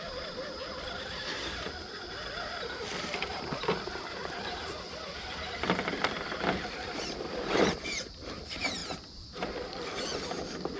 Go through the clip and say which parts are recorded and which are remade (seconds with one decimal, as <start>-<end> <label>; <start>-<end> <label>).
0.0-8.8 remade; 8.8-9.5 recorded; 9.5-10.8 remade